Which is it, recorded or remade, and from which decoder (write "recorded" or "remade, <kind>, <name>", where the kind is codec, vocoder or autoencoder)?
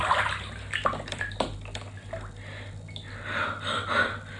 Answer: recorded